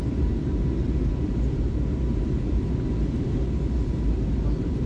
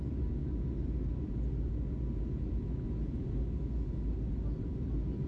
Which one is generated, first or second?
first